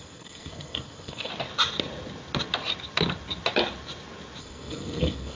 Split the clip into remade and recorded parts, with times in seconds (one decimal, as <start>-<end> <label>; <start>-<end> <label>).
0.0-1.3 remade; 1.3-4.4 recorded; 4.4-5.3 remade